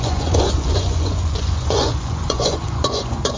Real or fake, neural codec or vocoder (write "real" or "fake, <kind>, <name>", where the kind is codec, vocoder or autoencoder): fake, vocoder, Vocos